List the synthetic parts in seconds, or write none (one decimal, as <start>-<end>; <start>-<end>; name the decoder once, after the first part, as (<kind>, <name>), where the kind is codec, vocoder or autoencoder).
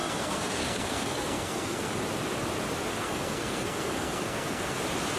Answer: 0.0-1.9 (codec, SNAC); 2.9-4.8